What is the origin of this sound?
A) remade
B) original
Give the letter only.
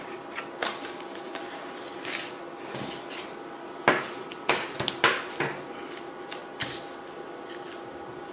B